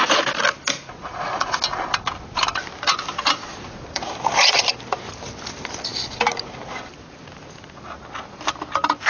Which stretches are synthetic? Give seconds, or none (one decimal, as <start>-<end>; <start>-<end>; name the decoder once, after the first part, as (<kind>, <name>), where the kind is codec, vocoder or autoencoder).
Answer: 1.0-1.6 (vocoder, Vocos); 3.5-4.6

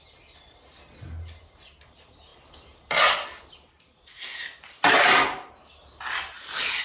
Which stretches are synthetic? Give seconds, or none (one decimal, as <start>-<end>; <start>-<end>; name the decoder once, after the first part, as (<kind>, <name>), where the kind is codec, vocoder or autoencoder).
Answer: none